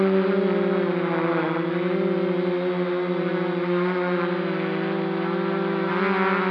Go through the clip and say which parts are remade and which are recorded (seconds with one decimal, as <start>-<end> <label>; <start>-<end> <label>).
0.0-6.5 recorded